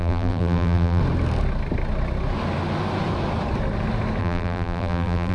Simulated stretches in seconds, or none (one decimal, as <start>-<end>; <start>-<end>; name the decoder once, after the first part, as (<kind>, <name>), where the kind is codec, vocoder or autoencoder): 0.0-1.0 (vocoder, BigVGAN v2); 4.2-5.3